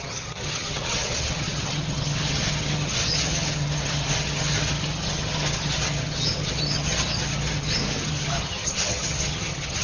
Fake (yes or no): yes